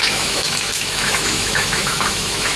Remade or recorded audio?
remade